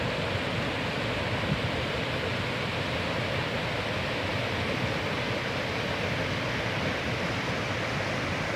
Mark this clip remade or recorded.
recorded